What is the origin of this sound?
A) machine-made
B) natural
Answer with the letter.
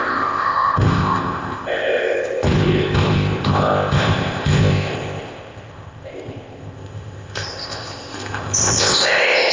A